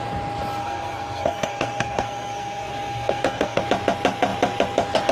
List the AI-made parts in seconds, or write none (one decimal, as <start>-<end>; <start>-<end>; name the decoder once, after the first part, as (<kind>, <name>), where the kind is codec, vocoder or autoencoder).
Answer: 0.6-3.6 (codec, SNAC)

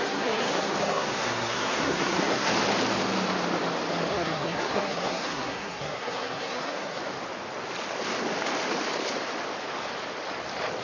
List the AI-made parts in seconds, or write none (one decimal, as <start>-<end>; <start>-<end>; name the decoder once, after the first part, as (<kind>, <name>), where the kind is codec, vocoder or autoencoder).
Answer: 0.0-2.5 (codec, SNAC); 4.1-7.0

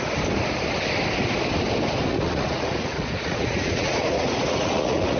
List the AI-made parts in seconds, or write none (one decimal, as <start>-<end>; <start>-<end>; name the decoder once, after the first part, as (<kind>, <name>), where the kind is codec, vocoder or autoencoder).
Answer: 2.1-5.2 (vocoder, Vocos)

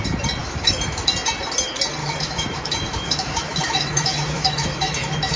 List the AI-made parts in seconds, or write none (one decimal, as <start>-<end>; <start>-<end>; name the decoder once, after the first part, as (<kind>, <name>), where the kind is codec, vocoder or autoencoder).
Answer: 0.4-1.1 (autoencoder, DAC-VAE); 2.0-5.4

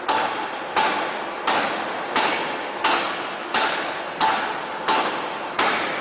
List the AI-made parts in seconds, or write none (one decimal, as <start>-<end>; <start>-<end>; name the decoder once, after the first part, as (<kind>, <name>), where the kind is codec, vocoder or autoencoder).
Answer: 3.4-4.0 (autoencoder, DAC-VAE)